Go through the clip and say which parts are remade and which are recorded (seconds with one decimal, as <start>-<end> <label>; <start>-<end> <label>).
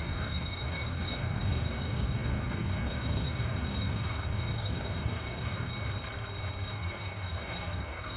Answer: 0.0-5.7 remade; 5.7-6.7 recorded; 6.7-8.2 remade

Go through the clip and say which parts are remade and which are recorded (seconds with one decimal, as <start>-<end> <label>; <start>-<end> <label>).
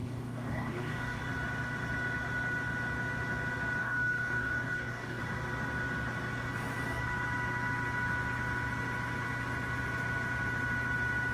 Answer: 0.0-1.2 remade; 1.2-3.8 recorded; 3.8-5.2 remade; 5.2-11.3 recorded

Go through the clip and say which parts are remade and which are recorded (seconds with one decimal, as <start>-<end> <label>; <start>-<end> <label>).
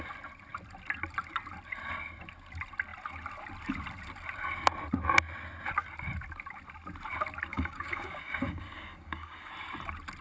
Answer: 0.0-7.5 recorded; 7.5-9.5 remade; 9.5-10.2 recorded